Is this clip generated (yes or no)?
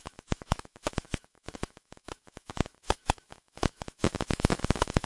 yes